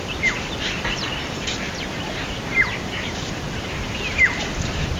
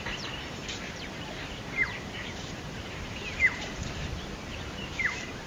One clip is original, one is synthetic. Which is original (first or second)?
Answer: first